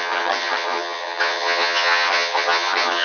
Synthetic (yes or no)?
yes